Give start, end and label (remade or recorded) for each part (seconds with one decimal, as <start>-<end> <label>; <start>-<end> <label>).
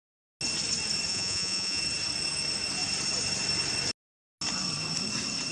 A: 0.0-1.1 recorded; 1.1-1.8 remade; 1.8-5.5 recorded